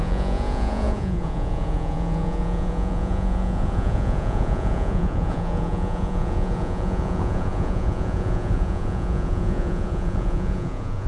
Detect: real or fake fake